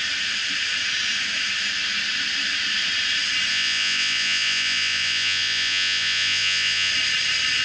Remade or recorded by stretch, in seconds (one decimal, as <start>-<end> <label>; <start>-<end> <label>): 0.0-3.5 recorded; 3.5-6.9 remade; 6.9-7.6 recorded